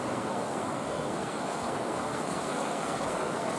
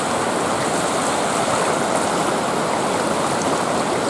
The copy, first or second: first